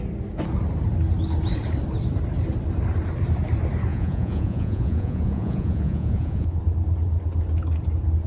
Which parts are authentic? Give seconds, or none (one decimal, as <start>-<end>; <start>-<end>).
0.0-3.9; 6.6-8.3